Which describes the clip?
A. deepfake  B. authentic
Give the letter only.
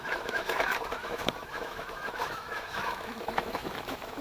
A